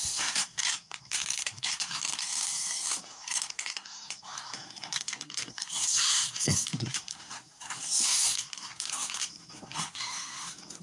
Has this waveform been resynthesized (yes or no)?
yes